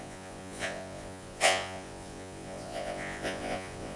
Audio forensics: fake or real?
fake